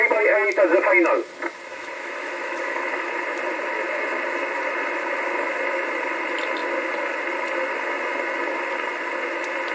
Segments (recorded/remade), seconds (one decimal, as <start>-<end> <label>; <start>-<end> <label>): 0.0-1.7 recorded; 1.7-3.1 remade; 3.1-9.7 recorded